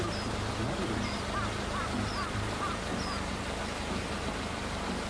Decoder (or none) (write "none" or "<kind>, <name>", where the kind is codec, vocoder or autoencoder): none